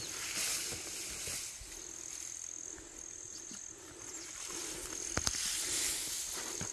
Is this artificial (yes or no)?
no